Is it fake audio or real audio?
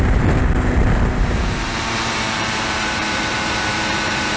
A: fake